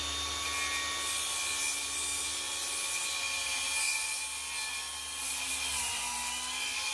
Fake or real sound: real